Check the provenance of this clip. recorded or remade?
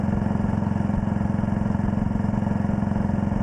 recorded